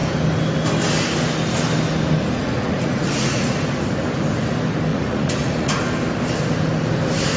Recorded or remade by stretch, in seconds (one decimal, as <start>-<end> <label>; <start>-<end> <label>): 0.0-2.4 recorded; 2.4-3.5 remade; 3.5-4.9 recorded; 4.9-5.8 remade; 5.8-7.4 recorded

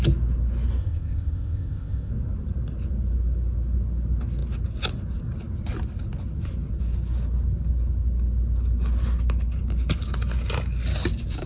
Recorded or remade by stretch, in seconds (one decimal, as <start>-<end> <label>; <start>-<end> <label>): 0.0-0.8 recorded; 0.8-2.1 remade; 2.1-11.5 recorded

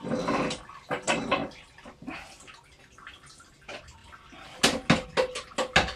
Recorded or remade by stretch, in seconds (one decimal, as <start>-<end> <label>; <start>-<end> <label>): 0.0-6.0 recorded

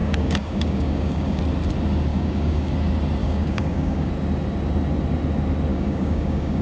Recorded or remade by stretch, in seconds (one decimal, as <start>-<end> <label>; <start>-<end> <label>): 0.0-1.4 remade; 1.4-2.1 recorded; 2.1-2.7 remade; 2.7-3.2 recorded; 3.2-4.1 remade; 4.1-5.7 recorded; 5.7-6.6 remade

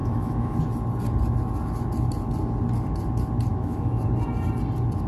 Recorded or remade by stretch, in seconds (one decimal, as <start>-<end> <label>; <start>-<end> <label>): 0.0-0.6 remade; 0.6-3.5 recorded; 3.5-4.0 remade; 4.0-5.1 recorded

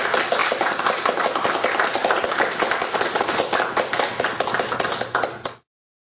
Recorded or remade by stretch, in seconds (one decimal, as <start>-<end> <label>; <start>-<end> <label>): 0.0-0.4 recorded; 0.4-1.2 remade; 1.2-2.0 recorded; 2.0-4.5 remade; 4.5-6.2 recorded

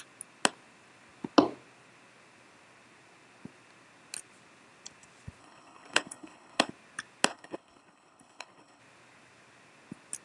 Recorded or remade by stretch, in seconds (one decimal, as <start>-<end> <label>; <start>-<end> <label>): 0.0-5.4 recorded; 5.4-6.7 remade; 6.7-7.3 recorded; 7.3-8.8 remade; 8.8-10.2 recorded

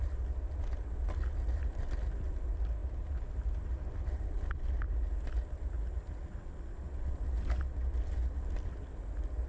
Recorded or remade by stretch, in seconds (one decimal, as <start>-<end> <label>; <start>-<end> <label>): 0.0-9.5 recorded